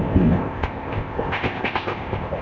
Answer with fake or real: fake